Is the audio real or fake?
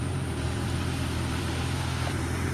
fake